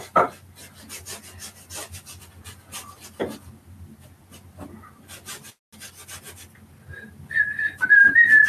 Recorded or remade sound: recorded